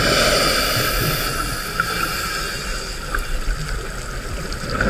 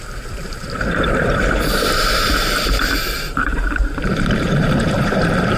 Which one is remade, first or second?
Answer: second